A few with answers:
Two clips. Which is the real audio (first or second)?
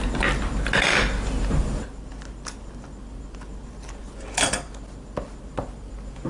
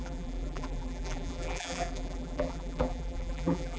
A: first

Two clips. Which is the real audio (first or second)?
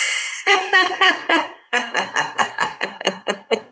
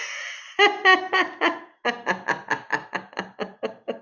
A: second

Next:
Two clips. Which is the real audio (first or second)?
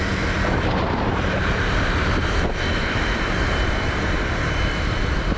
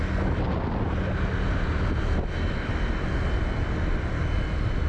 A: second